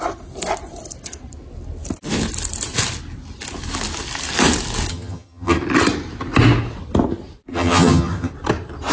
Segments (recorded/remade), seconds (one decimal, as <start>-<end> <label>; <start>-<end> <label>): 0.0-4.9 recorded; 4.9-5.6 remade; 5.6-7.5 recorded; 7.5-8.3 remade; 8.3-8.9 recorded